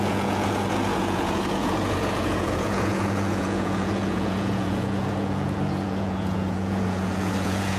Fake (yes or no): yes